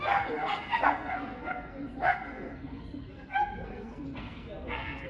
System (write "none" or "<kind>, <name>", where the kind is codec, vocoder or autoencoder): codec, SNAC